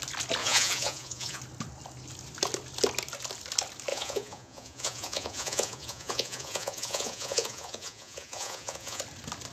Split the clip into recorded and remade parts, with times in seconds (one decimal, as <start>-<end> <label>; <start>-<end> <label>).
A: 0.0-0.4 recorded; 0.4-1.4 remade; 1.4-3.9 recorded; 3.9-9.0 remade; 9.0-9.5 recorded